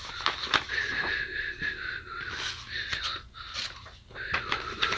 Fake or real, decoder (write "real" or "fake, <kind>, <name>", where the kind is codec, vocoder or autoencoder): real